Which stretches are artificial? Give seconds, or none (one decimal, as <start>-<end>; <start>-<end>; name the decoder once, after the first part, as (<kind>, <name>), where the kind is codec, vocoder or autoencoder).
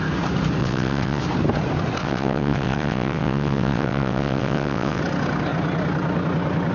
0.6-1.2 (vocoder, WaveNeXt); 2.0-5.0